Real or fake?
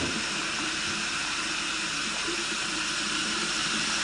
real